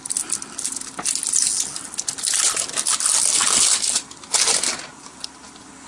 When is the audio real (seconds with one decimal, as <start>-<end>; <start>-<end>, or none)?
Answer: 0.0-5.9